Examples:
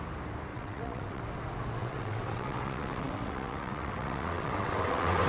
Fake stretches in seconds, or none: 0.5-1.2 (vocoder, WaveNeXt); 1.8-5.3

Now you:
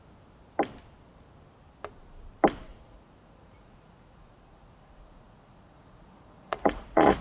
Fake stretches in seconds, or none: 2.7-7.2 (vocoder, Vocos)

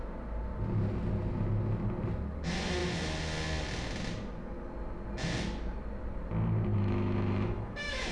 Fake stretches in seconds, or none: 6.7-8.1 (autoencoder, DAC-VAE)

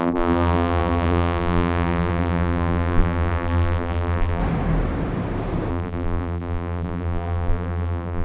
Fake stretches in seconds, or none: 0.0-4.4 (vocoder, BigVGAN v2); 5.7-8.2

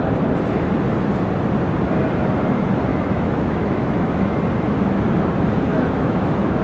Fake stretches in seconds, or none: 2.9-4.3 (autoencoder, DAC-VAE); 5.7-6.6

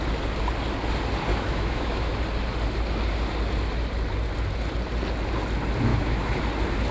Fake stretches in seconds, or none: 1.3-2.2 (autoencoder, DAC-VAE); 5.9-6.4

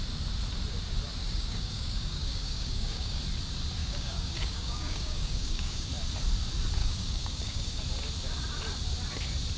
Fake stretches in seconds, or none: 1.2-3.2 (codec, DAC); 3.8-5.9; 6.8-7.8